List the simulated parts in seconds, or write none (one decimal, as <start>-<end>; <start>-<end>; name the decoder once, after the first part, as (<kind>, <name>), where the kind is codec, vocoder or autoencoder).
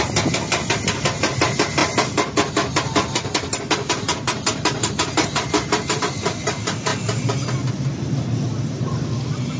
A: none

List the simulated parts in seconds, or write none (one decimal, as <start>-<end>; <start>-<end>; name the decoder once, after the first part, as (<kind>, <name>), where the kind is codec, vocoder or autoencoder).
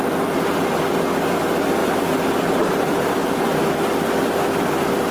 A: 1.8-3.4 (vocoder, BigVGAN v2)